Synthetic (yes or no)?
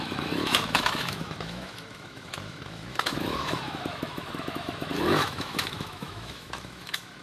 yes